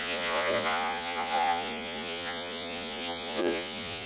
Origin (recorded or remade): remade